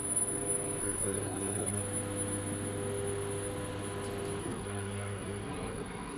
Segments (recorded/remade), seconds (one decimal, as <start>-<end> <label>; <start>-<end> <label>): 0.0-0.8 recorded; 0.8-1.8 remade; 1.8-4.4 recorded; 4.4-6.2 remade